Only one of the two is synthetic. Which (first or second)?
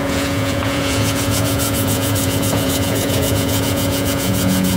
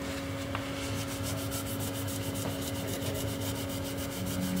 first